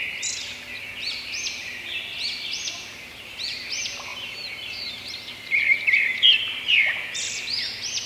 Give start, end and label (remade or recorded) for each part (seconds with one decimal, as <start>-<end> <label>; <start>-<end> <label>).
0.0-2.9 recorded; 2.9-3.6 remade; 3.6-4.1 recorded; 4.1-7.1 remade; 7.1-8.1 recorded